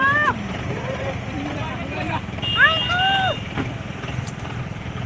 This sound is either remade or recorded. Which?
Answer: recorded